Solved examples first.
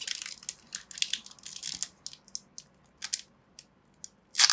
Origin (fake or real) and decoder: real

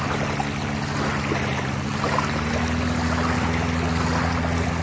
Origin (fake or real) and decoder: real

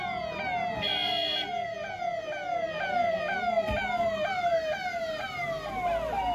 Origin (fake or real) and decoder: real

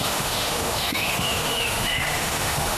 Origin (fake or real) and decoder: fake, autoencoder, DAC-VAE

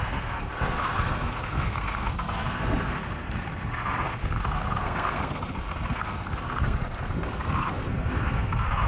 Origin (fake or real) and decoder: fake, codec, SNAC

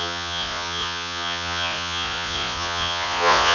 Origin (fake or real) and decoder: fake, vocoder, Vocos